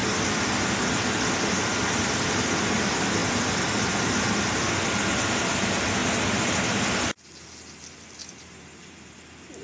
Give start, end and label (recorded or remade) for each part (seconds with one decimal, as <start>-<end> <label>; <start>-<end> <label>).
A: 0.0-9.6 recorded

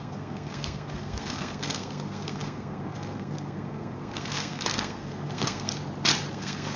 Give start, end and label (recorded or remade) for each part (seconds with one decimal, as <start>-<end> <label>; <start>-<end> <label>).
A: 0.0-5.7 remade; 5.7-6.3 recorded; 6.3-6.8 remade

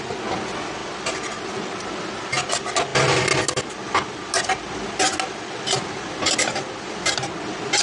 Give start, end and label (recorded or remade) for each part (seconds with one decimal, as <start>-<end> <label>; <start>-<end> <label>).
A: 0.0-7.8 recorded

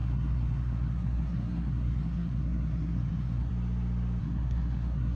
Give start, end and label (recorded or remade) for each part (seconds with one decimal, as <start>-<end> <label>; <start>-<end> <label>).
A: 0.0-3.5 remade; 3.5-4.2 recorded; 4.2-5.2 remade

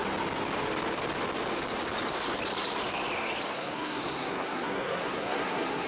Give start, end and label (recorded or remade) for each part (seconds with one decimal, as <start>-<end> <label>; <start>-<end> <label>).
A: 0.0-3.5 recorded; 3.5-5.9 remade

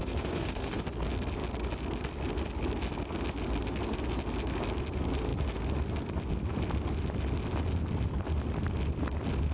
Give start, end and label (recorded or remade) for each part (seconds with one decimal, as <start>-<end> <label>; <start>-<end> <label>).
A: 0.0-0.8 remade; 0.8-9.5 recorded